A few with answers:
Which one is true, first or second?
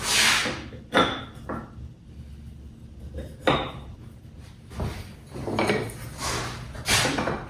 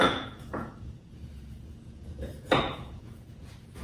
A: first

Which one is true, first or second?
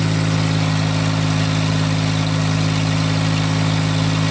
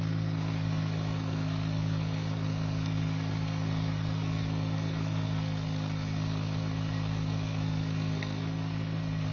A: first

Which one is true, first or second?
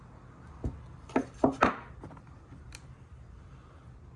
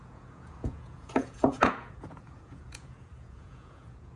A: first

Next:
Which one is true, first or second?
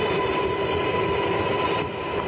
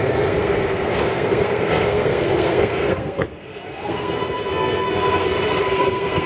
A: first